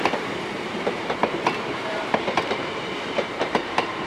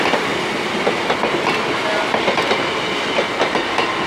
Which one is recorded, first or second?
second